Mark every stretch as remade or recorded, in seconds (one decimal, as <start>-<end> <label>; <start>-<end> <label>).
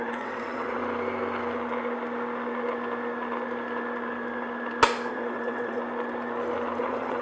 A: 0.0-0.8 remade; 0.8-5.1 recorded; 5.1-5.8 remade; 5.8-6.8 recorded; 6.8-7.2 remade